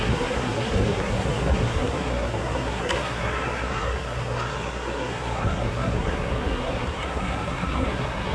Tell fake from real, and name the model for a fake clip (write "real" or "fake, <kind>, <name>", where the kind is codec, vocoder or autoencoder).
fake, codec, SNAC